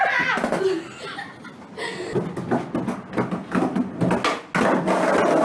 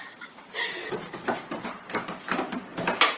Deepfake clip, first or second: second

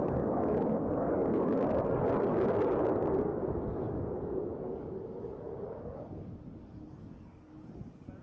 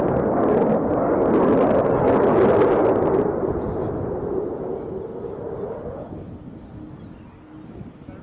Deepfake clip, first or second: first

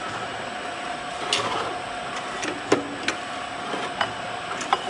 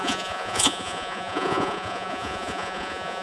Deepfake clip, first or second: second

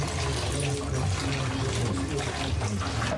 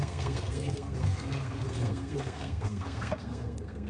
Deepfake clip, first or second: second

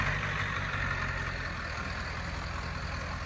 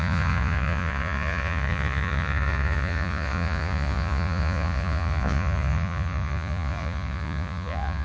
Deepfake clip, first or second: second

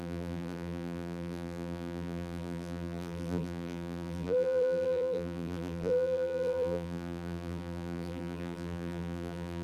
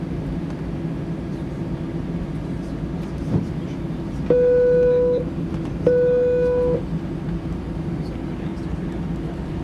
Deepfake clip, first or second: first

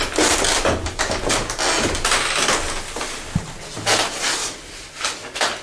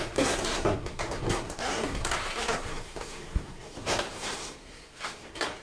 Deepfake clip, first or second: second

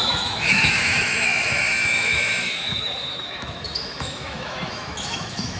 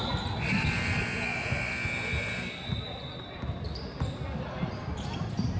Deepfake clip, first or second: first